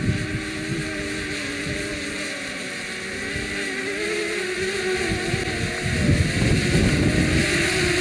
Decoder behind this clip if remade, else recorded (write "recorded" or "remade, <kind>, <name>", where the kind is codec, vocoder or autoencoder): recorded